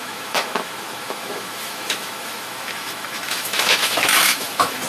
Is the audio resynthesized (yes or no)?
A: yes